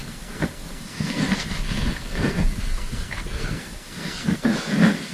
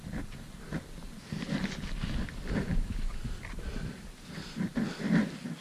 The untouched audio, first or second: second